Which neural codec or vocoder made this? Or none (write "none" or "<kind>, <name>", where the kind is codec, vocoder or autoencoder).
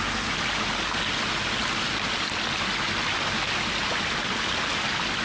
none